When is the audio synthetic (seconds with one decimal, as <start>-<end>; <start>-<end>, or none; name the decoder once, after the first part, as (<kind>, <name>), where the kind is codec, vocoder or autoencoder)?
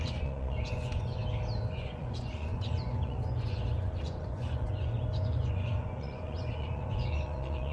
0.0-1.2 (vocoder, Vocos); 1.7-7.7